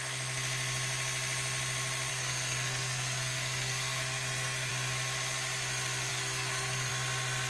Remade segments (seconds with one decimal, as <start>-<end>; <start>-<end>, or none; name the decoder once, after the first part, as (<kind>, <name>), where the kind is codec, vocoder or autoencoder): 2.1-4.7 (codec, SNAC); 6.1-6.9